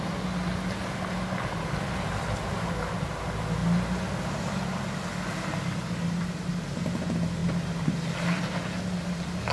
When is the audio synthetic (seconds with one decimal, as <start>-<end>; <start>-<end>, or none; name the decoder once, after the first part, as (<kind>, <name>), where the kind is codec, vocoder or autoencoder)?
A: none